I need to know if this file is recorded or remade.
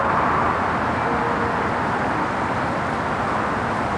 recorded